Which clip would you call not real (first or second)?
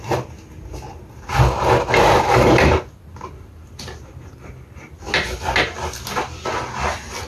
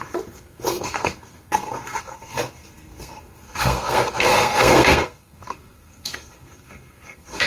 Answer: second